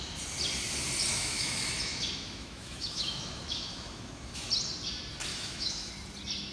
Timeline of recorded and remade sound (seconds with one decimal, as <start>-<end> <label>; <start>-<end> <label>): 0.0-1.1 recorded; 1.1-4.5 remade; 4.5-5.3 recorded; 5.3-5.9 remade; 5.9-6.5 recorded